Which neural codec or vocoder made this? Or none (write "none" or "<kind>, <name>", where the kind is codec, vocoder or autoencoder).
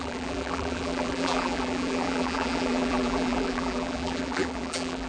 vocoder, BigVGAN v2